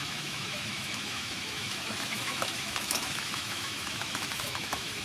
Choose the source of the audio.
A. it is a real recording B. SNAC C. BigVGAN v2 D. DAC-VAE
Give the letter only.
D